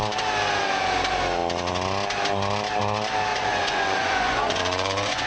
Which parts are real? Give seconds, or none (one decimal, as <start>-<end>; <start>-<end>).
0.0-3.3

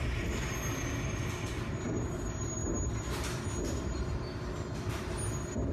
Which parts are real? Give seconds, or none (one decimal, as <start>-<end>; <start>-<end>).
0.0-1.2; 2.6-3.8

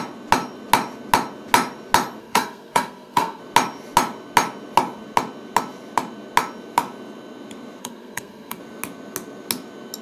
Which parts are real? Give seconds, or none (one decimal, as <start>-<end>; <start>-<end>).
0.0-2.2; 3.4-7.8; 8.6-10.0

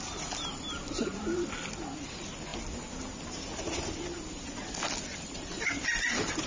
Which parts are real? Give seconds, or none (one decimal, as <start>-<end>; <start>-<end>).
0.0-5.1; 5.6-6.5

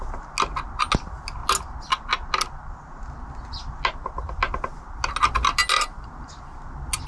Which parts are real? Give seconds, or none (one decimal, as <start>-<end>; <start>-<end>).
0.0-7.1

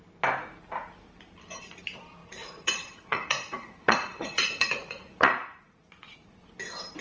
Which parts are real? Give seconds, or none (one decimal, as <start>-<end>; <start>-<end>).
0.0-2.2; 6.4-7.0

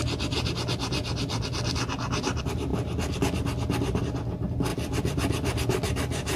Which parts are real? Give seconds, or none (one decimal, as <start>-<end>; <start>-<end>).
0.0-4.7

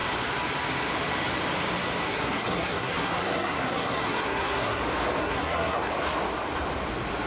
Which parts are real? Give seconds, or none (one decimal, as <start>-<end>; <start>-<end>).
0.0-2.1; 4.8-5.2; 5.9-7.3